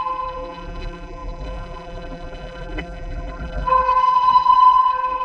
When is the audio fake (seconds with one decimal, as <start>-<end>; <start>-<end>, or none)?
0.0-5.2